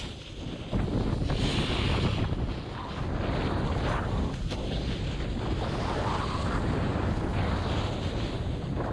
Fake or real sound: real